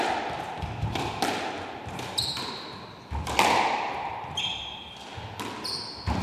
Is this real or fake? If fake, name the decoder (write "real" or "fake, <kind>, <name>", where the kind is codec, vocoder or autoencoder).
real